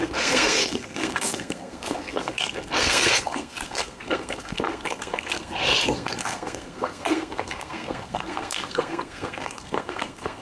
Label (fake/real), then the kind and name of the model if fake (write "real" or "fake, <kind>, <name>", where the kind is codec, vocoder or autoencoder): fake, codec, SNAC